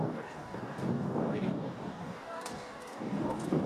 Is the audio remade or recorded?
remade